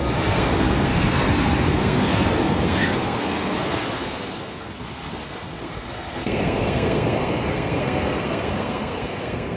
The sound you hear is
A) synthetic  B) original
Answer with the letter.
A